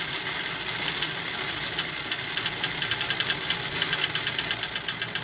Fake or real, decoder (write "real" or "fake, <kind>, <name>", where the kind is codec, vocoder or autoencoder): real